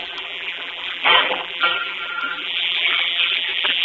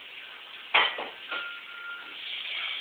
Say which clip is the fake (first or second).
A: first